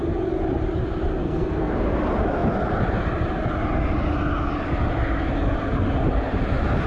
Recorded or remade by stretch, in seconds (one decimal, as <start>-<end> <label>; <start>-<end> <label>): 0.0-1.2 recorded; 1.2-1.7 remade; 1.7-6.9 recorded